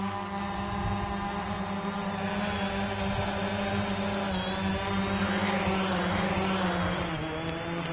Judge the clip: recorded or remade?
recorded